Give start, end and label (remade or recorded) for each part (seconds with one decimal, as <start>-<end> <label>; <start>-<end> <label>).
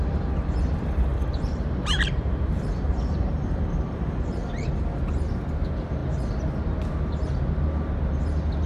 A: 0.0-1.1 recorded; 1.1-4.7 remade; 4.7-8.7 recorded